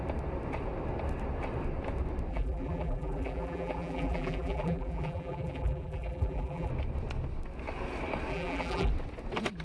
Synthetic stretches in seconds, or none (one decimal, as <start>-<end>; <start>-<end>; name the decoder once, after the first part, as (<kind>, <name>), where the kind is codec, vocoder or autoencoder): 2.3-6.7 (vocoder, BigVGAN v2); 8.3-8.9

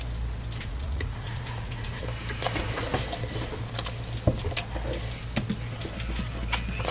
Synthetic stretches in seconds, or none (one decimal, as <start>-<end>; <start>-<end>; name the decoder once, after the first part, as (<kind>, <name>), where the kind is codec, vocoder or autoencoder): 0.6-2.0 (vocoder, Vocos)